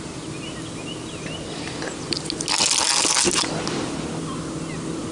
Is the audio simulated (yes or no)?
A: no